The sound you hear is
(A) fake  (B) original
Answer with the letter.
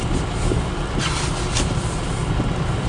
B